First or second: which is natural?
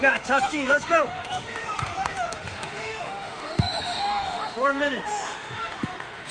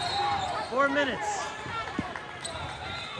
second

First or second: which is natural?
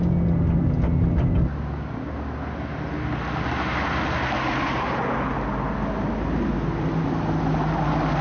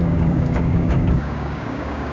first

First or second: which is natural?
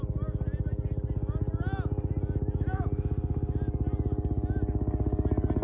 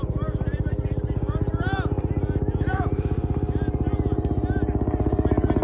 first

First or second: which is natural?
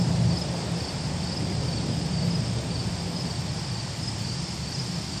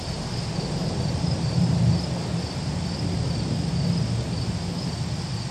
second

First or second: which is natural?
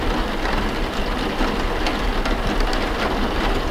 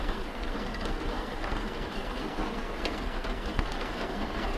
first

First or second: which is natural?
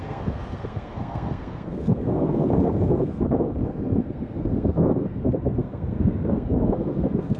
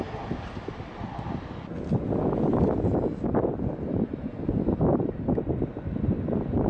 second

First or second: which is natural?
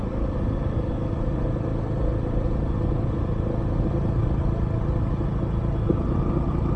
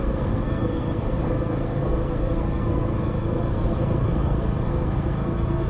first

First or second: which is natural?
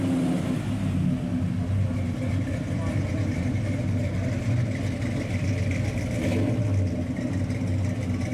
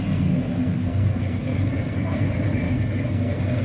first